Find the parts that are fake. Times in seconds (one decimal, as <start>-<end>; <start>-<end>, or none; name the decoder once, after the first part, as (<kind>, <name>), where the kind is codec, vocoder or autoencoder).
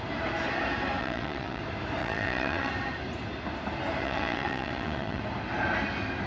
1.0-1.6 (vocoder, WaveNeXt); 2.0-2.7; 4.0-5.2